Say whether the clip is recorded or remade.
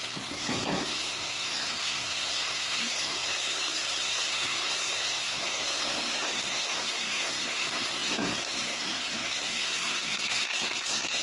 remade